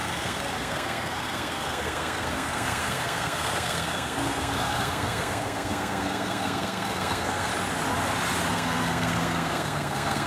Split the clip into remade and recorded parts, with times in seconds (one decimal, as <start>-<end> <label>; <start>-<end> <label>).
0.0-7.5 remade; 7.5-8.5 recorded; 8.5-10.3 remade